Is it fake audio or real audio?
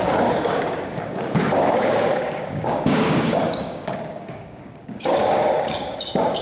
fake